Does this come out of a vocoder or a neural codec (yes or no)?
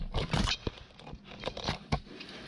yes